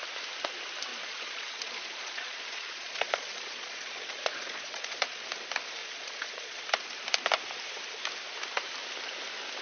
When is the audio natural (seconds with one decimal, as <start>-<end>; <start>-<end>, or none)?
0.0-0.9; 5.3-5.8; 6.9-9.6